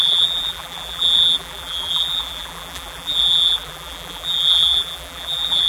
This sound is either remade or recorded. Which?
remade